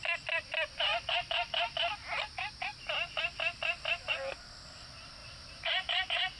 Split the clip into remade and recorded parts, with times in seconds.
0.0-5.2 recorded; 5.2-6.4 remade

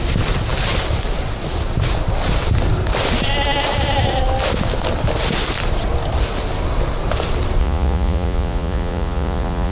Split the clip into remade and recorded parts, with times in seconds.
0.0-7.6 recorded; 7.6-9.7 remade

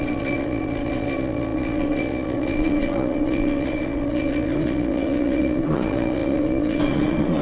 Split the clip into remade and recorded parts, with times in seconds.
0.0-7.4 remade

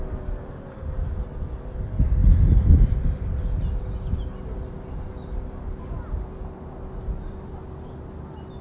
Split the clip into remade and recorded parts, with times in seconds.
0.0-8.6 recorded

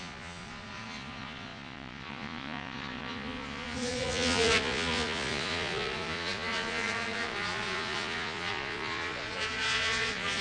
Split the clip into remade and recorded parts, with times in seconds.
0.0-10.4 remade